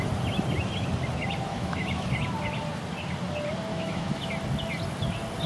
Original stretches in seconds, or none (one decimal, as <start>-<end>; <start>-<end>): 0.0-1.5; 2.1-3.7; 4.3-5.5